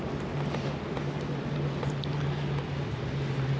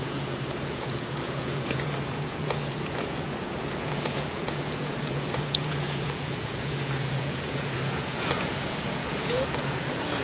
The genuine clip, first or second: first